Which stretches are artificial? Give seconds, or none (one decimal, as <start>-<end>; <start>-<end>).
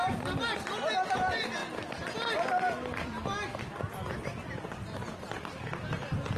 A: none